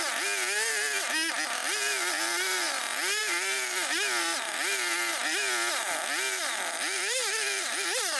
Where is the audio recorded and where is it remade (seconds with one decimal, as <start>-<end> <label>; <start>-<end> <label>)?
0.0-8.2 recorded